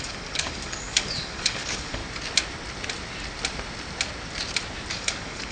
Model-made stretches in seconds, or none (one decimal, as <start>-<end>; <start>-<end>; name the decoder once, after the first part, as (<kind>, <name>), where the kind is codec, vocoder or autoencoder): 0.0-2.0 (codec, DAC); 4.9-5.5